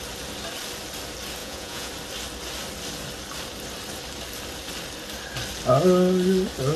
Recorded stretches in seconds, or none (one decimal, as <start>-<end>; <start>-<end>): 0.0-1.4; 1.9-6.8